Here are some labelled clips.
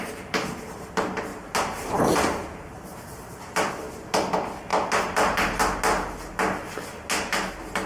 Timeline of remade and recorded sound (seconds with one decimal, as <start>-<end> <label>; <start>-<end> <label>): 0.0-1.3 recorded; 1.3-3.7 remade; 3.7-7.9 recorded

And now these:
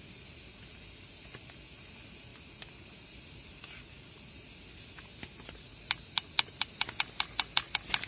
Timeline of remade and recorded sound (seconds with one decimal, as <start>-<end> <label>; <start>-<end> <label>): 0.0-2.3 recorded; 2.3-4.3 remade; 4.3-5.7 recorded; 5.7-6.9 remade; 6.9-8.1 recorded

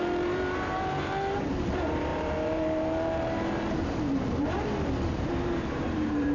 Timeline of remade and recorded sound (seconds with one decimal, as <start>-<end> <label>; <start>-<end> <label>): 0.0-6.3 remade

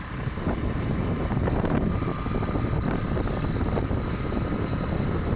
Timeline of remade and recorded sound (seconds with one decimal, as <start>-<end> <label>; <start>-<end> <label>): 0.0-2.1 remade; 2.1-5.4 recorded

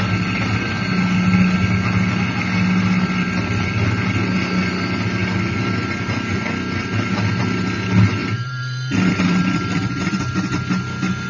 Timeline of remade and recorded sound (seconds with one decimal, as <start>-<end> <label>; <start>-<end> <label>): 0.0-8.2 recorded; 8.2-10.2 remade; 10.2-11.3 recorded

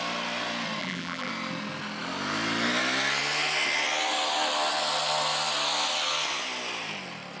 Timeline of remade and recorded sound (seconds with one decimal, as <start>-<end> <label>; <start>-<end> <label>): 0.0-0.8 recorded; 0.8-1.3 remade; 1.3-7.4 recorded